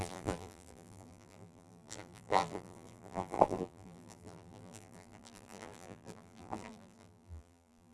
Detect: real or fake fake